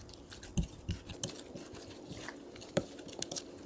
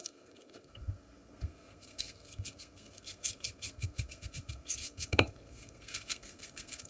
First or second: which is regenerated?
second